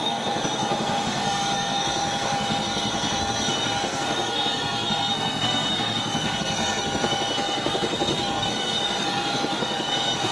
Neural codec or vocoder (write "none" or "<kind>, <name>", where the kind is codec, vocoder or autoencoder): codec, SNAC